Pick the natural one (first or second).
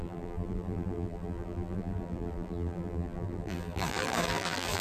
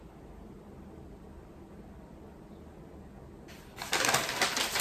second